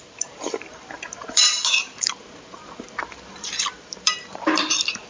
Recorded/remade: remade